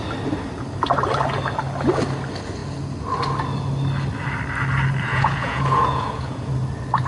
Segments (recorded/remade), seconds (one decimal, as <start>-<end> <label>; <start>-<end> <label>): 0.0-5.1 recorded; 5.1-6.5 remade; 6.5-7.1 recorded